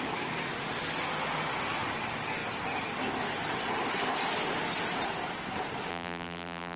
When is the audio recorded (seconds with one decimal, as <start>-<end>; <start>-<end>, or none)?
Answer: 0.0-5.9